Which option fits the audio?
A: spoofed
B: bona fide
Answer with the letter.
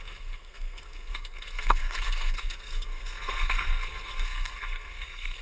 A